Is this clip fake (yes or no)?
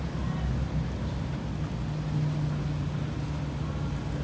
no